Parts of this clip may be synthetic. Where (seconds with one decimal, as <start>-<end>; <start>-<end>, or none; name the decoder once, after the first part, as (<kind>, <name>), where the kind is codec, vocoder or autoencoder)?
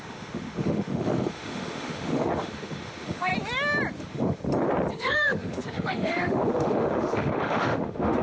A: 0.0-3.3 (autoencoder, DAC-VAE); 4.0-4.4; 4.9-8.2